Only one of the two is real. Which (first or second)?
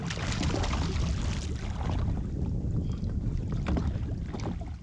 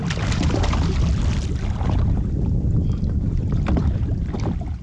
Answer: first